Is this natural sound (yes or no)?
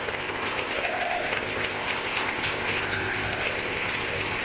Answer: no